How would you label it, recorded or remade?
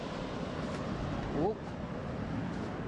recorded